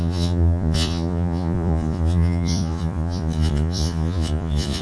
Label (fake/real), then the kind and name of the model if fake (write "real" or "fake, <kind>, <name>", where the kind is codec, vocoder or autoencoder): fake, vocoder, Vocos